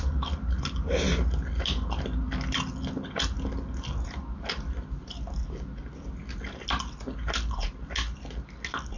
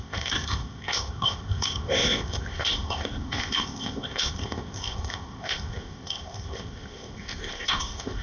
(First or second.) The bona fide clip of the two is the first